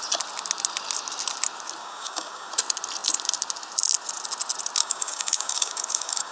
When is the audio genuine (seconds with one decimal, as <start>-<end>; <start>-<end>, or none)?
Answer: 0.0-1.8; 2.5-4.8